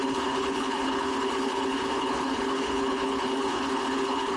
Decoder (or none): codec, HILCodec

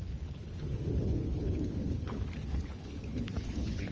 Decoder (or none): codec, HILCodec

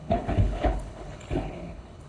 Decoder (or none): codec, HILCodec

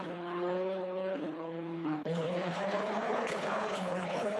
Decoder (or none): codec, HILCodec